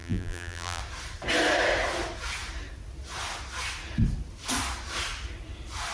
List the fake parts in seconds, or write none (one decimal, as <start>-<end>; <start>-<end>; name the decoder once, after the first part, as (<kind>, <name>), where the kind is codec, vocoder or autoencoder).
0.0-0.8 (vocoder, BigVGAN v2)